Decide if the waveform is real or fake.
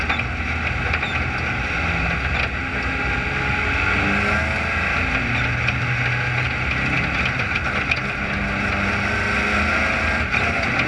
real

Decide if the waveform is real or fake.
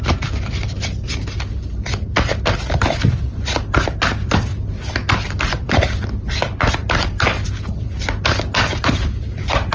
real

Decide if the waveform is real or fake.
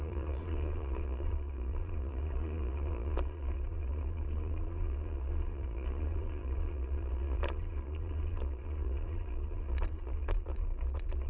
fake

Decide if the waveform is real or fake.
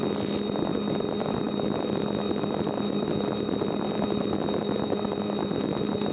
real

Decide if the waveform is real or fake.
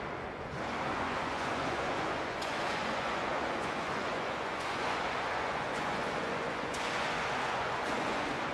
fake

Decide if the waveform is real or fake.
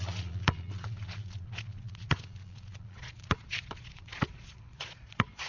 fake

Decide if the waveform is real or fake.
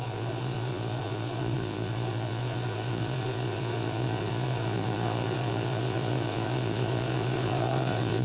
fake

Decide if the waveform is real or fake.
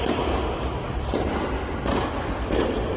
real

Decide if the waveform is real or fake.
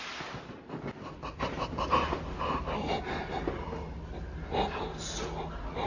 real